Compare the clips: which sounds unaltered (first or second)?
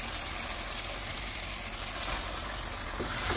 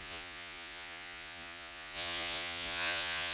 first